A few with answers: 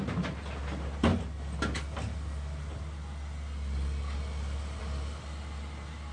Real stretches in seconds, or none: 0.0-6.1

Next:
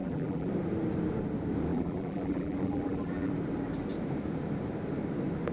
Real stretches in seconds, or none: 0.5-1.7; 3.3-5.5

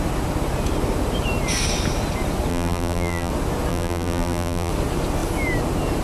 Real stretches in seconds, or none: 0.0-2.5; 3.3-3.7; 4.7-6.0

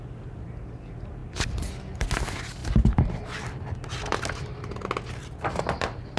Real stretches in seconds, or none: 0.0-1.2; 1.7-2.6; 3.1-6.2